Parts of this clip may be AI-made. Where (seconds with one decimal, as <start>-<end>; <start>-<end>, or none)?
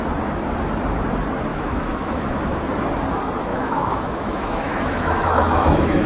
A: 1.5-2.6; 3.5-6.1